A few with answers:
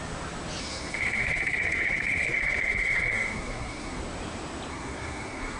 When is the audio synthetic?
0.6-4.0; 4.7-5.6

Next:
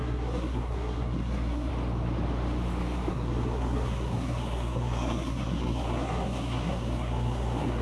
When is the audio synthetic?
0.0-1.7; 3.1-7.8